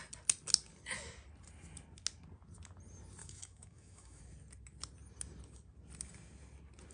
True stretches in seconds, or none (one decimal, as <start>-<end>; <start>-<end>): 0.0-3.2; 4.2-6.9